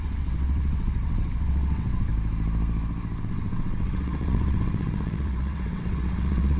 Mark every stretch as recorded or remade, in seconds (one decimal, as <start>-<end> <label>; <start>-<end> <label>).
0.0-2.1 remade; 2.1-3.2 recorded; 3.2-6.6 remade